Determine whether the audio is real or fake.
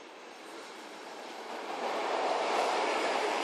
fake